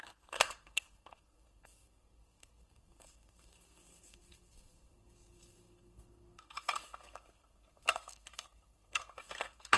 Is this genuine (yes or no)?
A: no